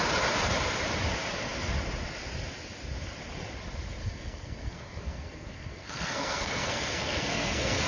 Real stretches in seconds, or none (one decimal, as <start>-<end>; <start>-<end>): 0.0-4.0